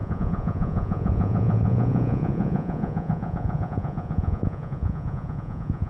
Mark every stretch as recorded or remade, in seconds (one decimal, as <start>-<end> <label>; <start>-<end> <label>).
0.0-5.9 remade